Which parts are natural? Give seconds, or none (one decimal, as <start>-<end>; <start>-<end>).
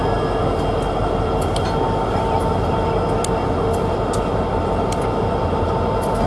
0.0-6.3